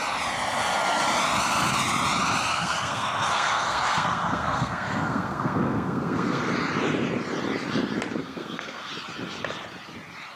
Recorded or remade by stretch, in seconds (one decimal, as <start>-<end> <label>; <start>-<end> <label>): 0.0-2.5 recorded; 2.5-6.4 remade; 6.4-8.2 recorded; 8.2-8.9 remade; 8.9-10.4 recorded

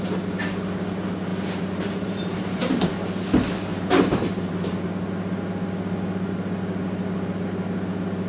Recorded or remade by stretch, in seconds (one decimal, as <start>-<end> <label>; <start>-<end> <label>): 0.0-1.3 recorded; 1.3-2.9 remade; 2.9-3.7 recorded; 3.7-4.9 remade; 4.9-8.3 recorded

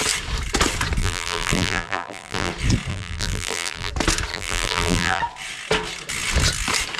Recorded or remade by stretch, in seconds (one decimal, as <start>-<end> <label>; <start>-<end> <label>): 0.0-1.0 recorded; 1.0-2.5 remade; 2.5-2.9 recorded; 2.9-3.9 remade; 3.9-4.3 recorded; 4.3-5.2 remade; 5.2-7.0 recorded

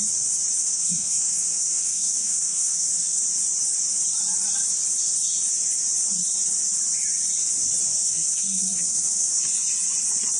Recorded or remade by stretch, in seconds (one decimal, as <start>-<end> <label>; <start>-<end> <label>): 0.0-0.6 recorded; 0.6-3.2 remade; 3.2-7.9 recorded; 7.9-9.4 remade; 9.4-10.4 recorded

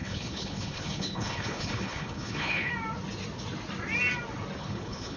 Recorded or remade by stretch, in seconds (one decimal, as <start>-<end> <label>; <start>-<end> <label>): 0.0-2.7 remade; 2.7-4.6 recorded; 4.6-5.2 remade

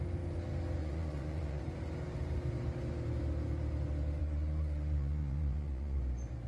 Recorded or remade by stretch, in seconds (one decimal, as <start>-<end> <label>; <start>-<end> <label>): 0.0-0.8 recorded; 0.8-1.6 remade; 1.6-4.2 recorded; 4.2-6.0 remade; 6.0-6.5 recorded